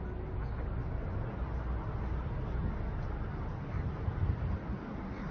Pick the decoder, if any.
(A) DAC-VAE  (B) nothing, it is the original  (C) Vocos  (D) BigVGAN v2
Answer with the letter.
B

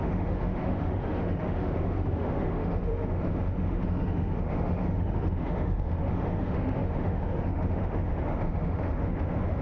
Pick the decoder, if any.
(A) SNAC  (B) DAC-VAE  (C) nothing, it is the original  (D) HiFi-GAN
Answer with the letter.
B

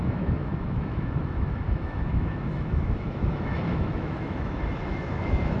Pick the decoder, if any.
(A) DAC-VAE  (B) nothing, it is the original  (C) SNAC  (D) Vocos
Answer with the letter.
A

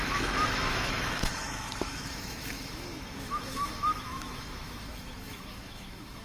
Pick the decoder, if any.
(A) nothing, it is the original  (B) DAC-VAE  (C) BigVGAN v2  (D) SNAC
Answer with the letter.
B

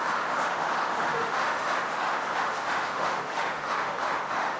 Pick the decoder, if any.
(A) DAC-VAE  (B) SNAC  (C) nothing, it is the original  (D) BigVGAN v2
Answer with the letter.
A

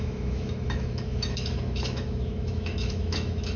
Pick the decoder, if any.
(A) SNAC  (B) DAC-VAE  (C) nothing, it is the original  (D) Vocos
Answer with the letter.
B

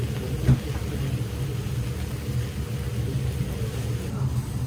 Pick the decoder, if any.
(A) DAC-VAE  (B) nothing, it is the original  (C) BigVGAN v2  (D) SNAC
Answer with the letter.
B